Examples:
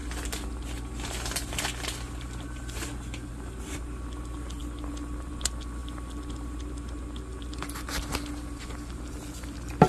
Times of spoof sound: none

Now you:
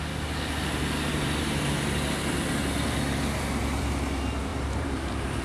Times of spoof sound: 4.5-5.4 (vocoder, BigVGAN v2)

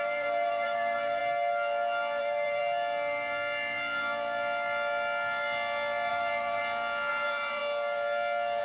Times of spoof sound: 0.0-1.2 (vocoder, BigVGAN v2); 2.2-2.6; 6.1-6.6; 7.1-7.6